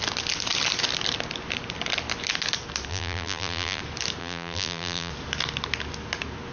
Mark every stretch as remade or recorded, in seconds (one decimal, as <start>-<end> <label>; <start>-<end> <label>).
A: 0.0-2.9 recorded; 2.9-3.8 remade; 3.8-4.2 recorded; 4.2-5.1 remade; 5.1-6.5 recorded

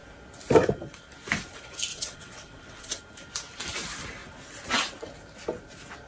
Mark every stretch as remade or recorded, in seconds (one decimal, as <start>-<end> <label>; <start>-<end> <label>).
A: 0.0-1.9 recorded; 1.9-3.0 remade; 3.0-6.1 recorded

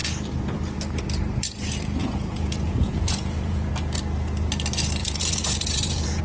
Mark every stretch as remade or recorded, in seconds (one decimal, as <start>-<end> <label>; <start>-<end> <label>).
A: 0.0-2.0 recorded; 2.0-3.7 remade; 3.7-5.0 recorded; 5.0-6.2 remade

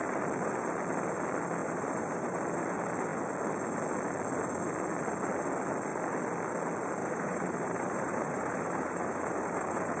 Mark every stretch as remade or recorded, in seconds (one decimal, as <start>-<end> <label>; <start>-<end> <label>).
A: 0.0-1.6 recorded; 1.6-2.4 remade; 2.4-7.0 recorded; 7.0-10.0 remade

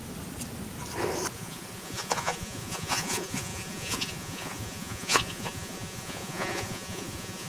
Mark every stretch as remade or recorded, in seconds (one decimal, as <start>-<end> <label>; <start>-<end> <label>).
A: 0.0-1.3 recorded; 1.3-7.5 remade

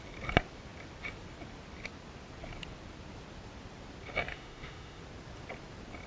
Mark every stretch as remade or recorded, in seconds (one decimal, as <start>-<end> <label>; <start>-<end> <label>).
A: 0.0-4.3 recorded; 4.3-5.0 remade; 5.0-6.1 recorded

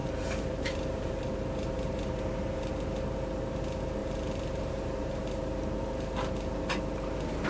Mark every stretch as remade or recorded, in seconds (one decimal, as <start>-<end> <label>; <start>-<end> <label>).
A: 0.0-2.7 remade; 2.7-4.0 recorded; 4.0-5.4 remade; 5.4-7.5 recorded